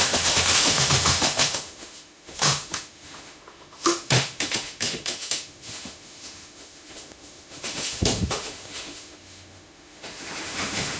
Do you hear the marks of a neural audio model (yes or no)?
yes